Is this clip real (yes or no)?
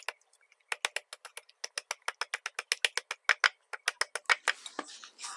yes